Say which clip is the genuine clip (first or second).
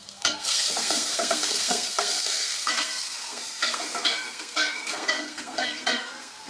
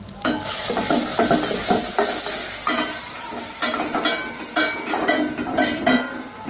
second